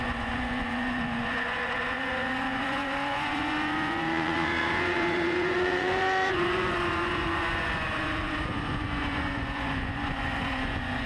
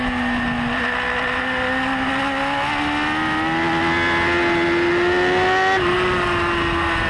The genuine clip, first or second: second